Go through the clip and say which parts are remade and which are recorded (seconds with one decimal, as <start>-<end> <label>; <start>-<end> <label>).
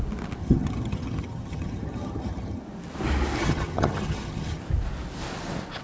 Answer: 0.0-0.4 recorded; 0.4-2.6 remade; 2.6-3.4 recorded; 3.4-4.6 remade; 4.6-5.8 recorded